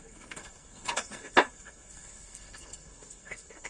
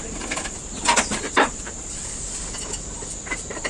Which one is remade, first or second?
first